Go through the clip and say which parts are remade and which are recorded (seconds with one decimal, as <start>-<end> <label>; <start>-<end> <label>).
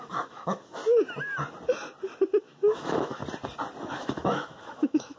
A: 0.0-0.8 remade; 0.8-2.4 recorded; 2.4-3.2 remade; 3.2-3.8 recorded; 3.8-5.2 remade